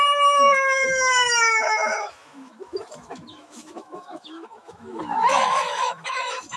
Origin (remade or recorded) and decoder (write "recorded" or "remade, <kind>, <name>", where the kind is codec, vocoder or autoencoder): remade, autoencoder, DAC-VAE